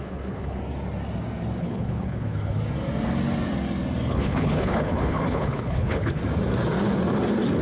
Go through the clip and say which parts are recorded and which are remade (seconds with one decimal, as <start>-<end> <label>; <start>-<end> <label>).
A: 0.0-0.6 remade; 0.6-1.6 recorded; 1.6-2.6 remade; 2.6-4.1 recorded; 4.1-6.2 remade; 6.2-7.6 recorded

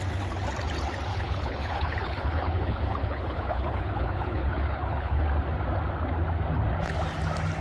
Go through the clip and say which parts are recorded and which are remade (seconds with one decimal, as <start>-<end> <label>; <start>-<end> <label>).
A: 0.0-1.1 recorded; 1.1-5.2 remade; 5.2-7.6 recorded

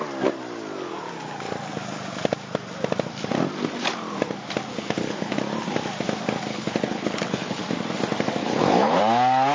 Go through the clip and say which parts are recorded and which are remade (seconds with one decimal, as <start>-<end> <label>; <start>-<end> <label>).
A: 0.0-4.7 recorded; 4.7-5.4 remade; 5.4-6.5 recorded; 6.5-7.6 remade; 7.6-8.4 recorded; 8.4-9.0 remade; 9.0-9.5 recorded

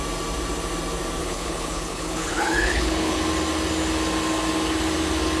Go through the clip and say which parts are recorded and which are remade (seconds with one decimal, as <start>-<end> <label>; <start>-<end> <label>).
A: 0.0-1.2 recorded; 1.2-3.2 remade; 3.2-5.4 recorded

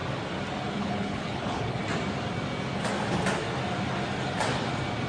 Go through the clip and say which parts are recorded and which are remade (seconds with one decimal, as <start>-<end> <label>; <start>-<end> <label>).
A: 0.0-0.7 recorded; 0.7-1.8 remade; 1.8-5.1 recorded

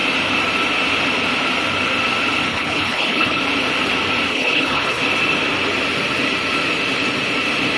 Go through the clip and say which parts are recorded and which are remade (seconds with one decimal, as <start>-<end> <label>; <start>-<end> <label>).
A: 0.0-2.5 recorded; 2.5-3.4 remade; 3.4-4.3 recorded; 4.3-5.0 remade; 5.0-7.8 recorded

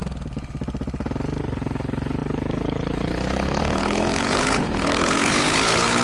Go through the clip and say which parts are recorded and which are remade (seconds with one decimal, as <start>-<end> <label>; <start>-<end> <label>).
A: 0.0-1.4 recorded; 1.4-6.0 remade